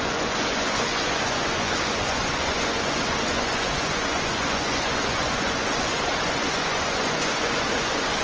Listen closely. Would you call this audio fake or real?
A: fake